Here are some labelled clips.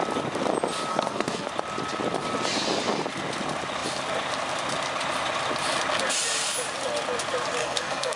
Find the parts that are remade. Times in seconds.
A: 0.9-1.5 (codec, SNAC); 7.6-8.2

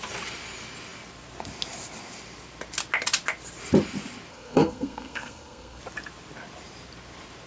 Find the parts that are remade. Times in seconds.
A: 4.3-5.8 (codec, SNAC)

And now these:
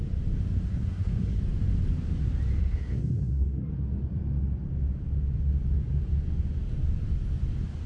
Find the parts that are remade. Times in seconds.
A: 0.7-1.4 (codec, SNAC); 2.6-3.7

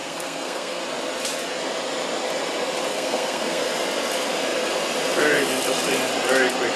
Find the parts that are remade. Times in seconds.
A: 0.0-0.8 (codec, SNAC); 2.9-3.6

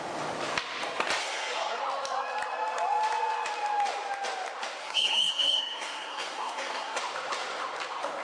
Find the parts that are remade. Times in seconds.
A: 1.2-1.8 (codec, SNAC); 4.8-7.0